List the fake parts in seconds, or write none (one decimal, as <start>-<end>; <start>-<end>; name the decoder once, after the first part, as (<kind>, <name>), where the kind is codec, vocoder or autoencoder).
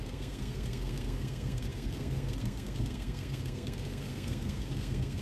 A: 0.0-5.2 (codec, SNAC)